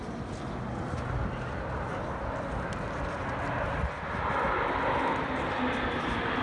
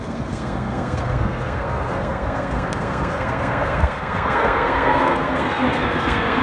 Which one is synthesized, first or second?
second